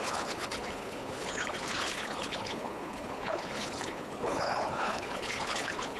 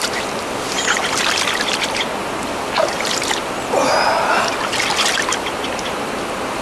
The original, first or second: second